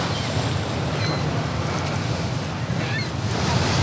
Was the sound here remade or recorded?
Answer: recorded